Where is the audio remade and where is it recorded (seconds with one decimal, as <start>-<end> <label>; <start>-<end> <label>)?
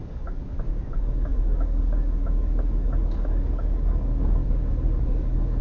0.0-5.6 remade